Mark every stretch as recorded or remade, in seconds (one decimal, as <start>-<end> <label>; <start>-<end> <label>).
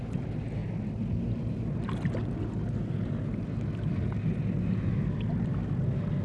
0.0-6.2 recorded